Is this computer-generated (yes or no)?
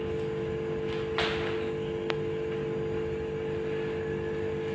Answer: no